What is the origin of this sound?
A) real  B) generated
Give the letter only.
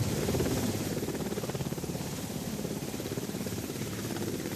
B